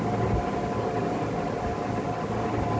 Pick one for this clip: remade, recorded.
recorded